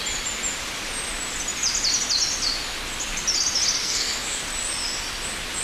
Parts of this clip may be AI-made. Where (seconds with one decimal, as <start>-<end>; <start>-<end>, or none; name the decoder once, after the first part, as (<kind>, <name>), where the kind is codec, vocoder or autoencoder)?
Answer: 3.8-4.4 (codec, SNAC)